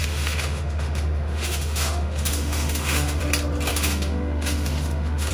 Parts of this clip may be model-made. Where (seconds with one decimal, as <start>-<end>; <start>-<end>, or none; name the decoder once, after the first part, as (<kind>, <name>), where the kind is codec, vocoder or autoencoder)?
0.0-3.2 (autoencoder, DAC-VAE); 3.7-5.3